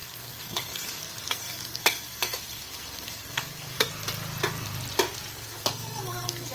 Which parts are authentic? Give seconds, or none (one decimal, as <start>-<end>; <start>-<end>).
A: 3.9-5.3